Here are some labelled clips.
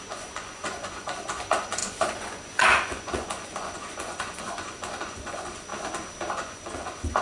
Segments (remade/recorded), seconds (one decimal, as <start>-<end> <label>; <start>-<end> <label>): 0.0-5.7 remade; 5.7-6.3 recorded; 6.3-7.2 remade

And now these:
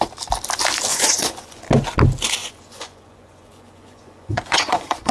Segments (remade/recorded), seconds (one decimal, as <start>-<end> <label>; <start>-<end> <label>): 0.0-0.9 recorded; 0.9-1.6 remade; 1.6-2.4 recorded; 2.4-5.1 remade

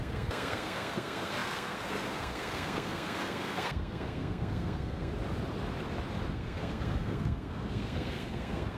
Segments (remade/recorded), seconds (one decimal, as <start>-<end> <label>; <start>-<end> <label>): 0.0-5.1 remade; 5.1-6.3 recorded; 6.3-8.8 remade

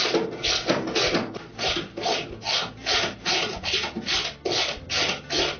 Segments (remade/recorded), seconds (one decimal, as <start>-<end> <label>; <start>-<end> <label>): 0.0-1.5 recorded; 1.5-4.9 remade; 4.9-5.6 recorded

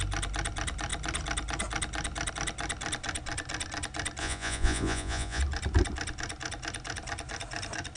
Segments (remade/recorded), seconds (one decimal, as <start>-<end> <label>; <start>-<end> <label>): 0.0-4.2 recorded; 4.2-5.4 remade; 5.4-8.0 recorded

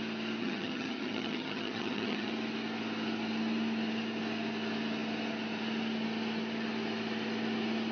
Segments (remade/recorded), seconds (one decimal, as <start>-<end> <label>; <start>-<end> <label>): 0.0-0.4 recorded; 0.4-2.3 remade; 2.3-7.9 recorded

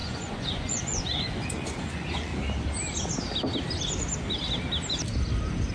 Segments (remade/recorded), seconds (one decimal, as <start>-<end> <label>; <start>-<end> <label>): 0.0-2.3 remade; 2.3-5.7 recorded

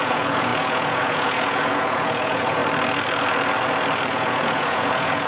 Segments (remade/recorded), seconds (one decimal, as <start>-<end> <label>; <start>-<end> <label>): 0.0-2.6 remade; 2.6-4.1 recorded; 4.1-5.3 remade